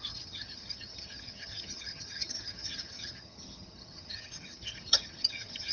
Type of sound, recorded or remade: remade